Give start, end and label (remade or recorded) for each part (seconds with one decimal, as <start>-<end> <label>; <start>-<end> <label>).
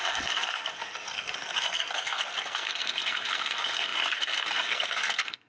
0.0-5.5 remade